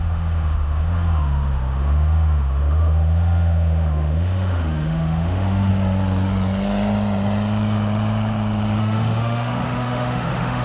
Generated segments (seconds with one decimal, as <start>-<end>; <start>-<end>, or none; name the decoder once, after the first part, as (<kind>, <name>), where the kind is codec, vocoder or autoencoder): 0.0-5.7 (autoencoder, DAC-VAE); 8.8-10.6